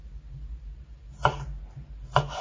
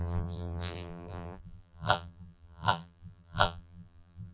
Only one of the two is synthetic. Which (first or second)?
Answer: second